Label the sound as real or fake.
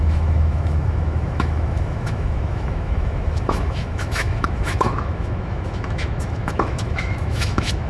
fake